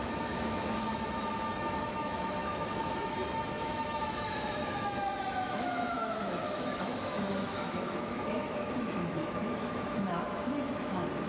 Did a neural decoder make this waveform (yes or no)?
yes